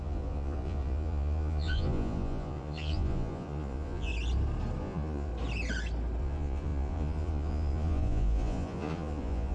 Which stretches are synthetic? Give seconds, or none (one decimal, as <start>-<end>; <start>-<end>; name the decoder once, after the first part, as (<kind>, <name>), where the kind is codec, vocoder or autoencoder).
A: 0.0-4.1 (vocoder, Vocos); 4.8-5.3; 6.2-9.5

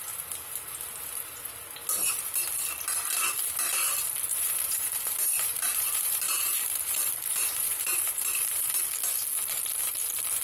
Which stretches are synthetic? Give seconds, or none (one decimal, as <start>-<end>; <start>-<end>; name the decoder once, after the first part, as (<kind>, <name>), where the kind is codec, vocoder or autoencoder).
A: 4.3-8.7 (vocoder, BigVGAN v2)

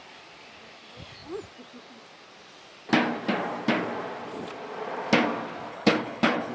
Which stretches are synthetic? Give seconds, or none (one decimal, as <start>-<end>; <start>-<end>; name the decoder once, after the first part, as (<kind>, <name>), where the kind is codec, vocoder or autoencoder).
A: 5.7-6.5 (codec, HILCodec)

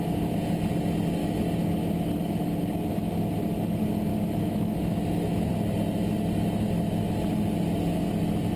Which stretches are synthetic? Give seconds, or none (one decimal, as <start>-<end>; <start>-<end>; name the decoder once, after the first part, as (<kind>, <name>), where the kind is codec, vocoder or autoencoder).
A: 1.2-1.8 (autoencoder, DAC-VAE); 4.1-5.5

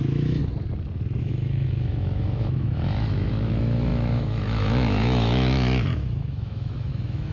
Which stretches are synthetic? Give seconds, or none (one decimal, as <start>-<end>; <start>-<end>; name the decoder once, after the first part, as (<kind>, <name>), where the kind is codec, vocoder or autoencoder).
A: 0.0-0.4 (autoencoder, DAC-VAE); 1.2-7.3